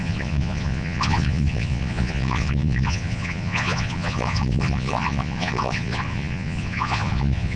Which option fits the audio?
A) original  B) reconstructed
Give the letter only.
B